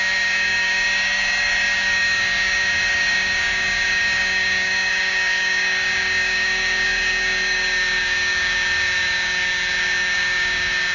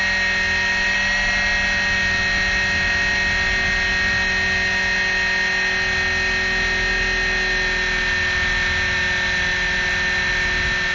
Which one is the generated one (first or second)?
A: first